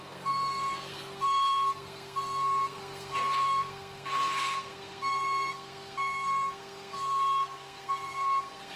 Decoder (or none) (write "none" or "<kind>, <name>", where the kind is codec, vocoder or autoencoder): codec, SNAC